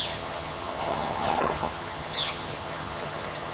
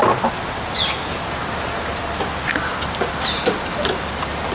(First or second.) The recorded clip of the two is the second